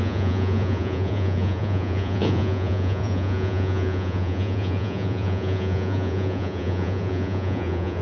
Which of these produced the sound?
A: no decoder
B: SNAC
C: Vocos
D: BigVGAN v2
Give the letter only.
C